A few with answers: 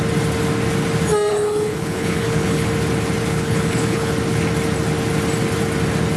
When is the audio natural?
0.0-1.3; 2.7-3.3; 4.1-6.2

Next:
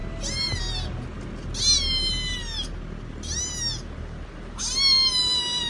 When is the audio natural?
0.0-5.7

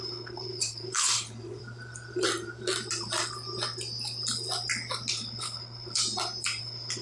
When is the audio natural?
1.6-5.1; 6.0-6.6

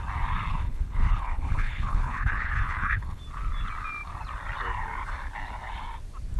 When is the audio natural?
0.0-0.5; 3.2-6.4